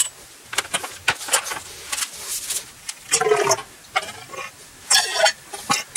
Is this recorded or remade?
recorded